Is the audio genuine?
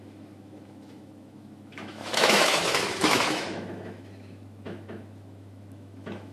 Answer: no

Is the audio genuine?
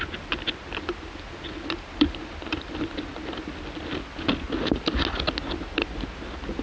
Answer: yes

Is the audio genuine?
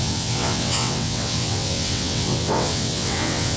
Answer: no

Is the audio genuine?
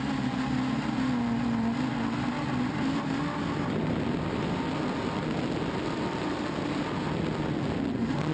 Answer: yes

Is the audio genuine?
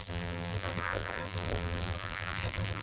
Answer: no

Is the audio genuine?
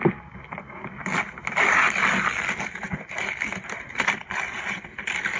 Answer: yes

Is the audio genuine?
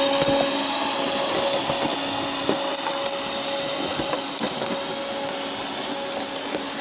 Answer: yes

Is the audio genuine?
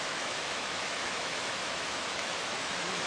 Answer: no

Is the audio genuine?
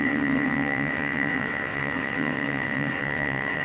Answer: no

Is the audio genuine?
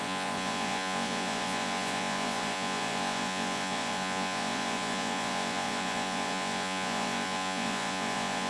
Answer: no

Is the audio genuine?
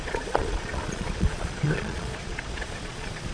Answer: no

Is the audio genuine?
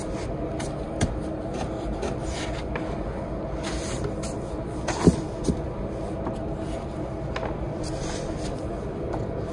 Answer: yes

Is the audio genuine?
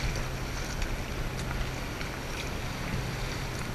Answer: yes